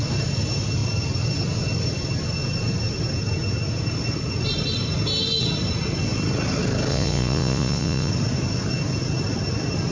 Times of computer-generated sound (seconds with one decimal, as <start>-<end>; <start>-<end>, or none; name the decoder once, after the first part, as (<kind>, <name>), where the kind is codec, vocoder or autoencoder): 6.9-8.1 (vocoder, Vocos)

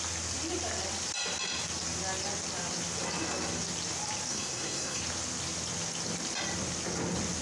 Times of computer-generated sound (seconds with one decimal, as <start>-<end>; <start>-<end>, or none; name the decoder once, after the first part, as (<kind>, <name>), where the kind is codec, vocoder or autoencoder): 4.3-5.0 (codec, SNAC)